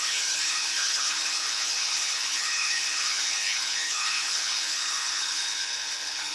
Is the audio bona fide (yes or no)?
no